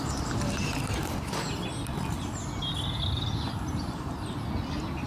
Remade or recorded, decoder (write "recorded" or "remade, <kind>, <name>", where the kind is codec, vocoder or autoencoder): recorded